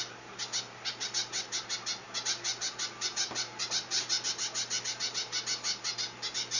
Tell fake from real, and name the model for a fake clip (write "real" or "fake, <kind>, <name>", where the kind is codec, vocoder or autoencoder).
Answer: real